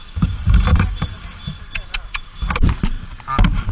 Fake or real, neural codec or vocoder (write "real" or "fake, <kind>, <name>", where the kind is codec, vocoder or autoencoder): real